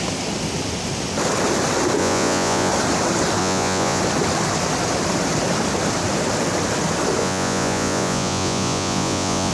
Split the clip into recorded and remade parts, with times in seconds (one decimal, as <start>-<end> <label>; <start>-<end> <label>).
0.0-2.0 recorded; 2.0-2.7 remade; 2.7-3.4 recorded; 3.4-4.0 remade; 4.0-7.2 recorded; 7.2-9.5 remade